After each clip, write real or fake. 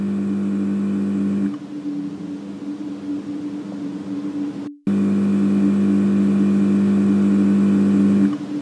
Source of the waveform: real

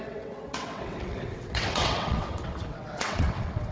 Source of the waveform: fake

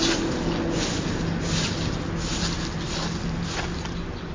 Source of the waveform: real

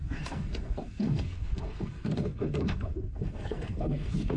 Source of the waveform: fake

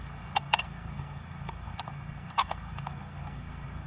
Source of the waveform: fake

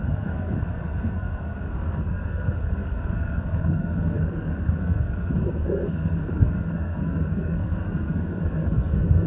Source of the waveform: fake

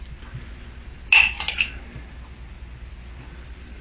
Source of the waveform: real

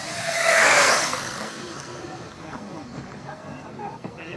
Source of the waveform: fake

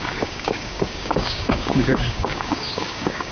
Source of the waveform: fake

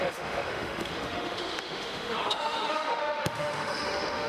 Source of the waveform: fake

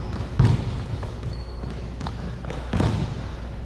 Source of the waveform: fake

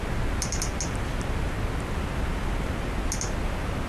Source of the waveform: real